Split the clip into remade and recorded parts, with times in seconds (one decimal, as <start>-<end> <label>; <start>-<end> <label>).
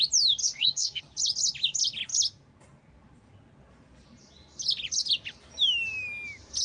0.0-0.4 recorded; 0.4-1.0 remade; 1.0-6.6 recorded